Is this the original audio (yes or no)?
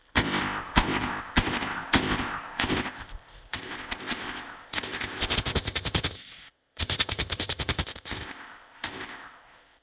no